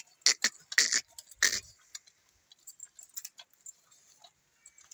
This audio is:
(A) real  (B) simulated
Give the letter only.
A